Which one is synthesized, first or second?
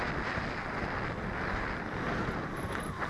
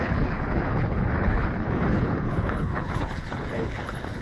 second